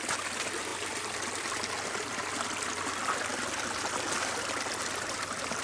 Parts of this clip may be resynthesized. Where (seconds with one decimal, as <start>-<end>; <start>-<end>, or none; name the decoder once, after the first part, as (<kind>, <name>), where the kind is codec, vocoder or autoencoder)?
none